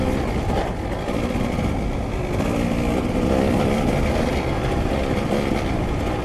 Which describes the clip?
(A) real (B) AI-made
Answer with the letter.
A